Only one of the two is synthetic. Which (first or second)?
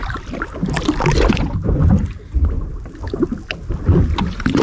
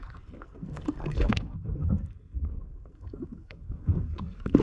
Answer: second